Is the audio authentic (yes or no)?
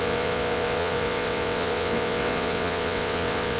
no